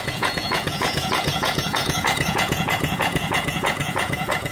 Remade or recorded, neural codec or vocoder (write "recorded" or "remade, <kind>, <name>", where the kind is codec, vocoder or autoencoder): remade, vocoder, Vocos